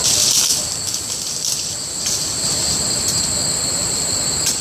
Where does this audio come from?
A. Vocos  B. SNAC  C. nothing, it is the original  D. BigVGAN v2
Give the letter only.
D